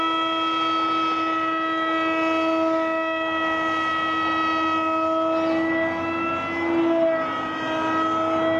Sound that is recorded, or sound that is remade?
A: recorded